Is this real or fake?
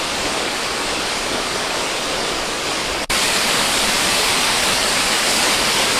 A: fake